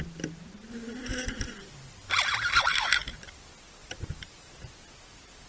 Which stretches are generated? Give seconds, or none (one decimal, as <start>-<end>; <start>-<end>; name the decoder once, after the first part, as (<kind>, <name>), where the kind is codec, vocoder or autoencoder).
1.1-2.5 (vocoder, BigVGAN v2); 3.8-4.5